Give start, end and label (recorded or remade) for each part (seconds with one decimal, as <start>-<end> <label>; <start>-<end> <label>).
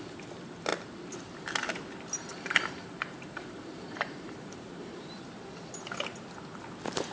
0.0-2.3 recorded; 2.3-5.1 remade; 5.1-7.1 recorded